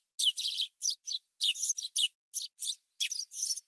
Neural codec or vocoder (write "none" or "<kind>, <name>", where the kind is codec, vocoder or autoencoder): none